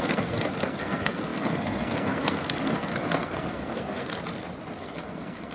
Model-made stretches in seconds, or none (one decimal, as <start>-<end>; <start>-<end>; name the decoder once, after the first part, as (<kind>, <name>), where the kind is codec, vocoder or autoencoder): 0.0-4.1 (codec, SNAC); 4.8-5.5